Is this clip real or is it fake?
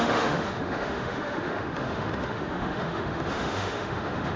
fake